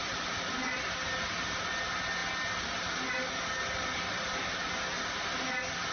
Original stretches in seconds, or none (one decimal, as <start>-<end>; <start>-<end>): 0.0-5.9